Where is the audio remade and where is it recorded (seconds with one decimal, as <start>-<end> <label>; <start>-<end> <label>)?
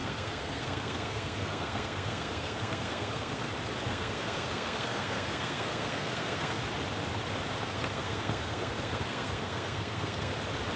0.0-3.5 remade; 3.5-3.9 recorded; 3.9-6.6 remade; 6.6-7.6 recorded; 7.6-10.3 remade; 10.3-10.8 recorded